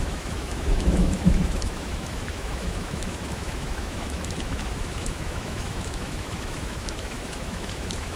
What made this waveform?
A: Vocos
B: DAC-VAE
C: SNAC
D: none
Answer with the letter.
B